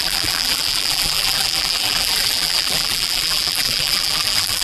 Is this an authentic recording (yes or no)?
no